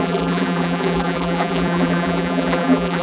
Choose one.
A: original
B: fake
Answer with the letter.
B